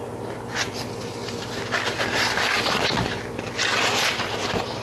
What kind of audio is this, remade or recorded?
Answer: recorded